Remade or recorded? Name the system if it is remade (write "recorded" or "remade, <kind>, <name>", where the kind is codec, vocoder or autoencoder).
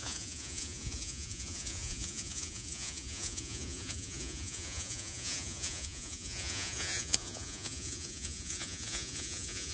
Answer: remade, vocoder, Vocos